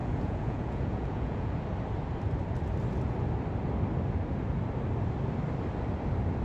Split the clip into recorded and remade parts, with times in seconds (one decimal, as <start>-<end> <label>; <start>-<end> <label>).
0.0-1.6 remade; 1.6-6.4 recorded